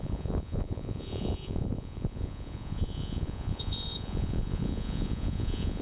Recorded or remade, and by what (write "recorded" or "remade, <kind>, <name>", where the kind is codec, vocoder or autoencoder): remade, vocoder, Vocos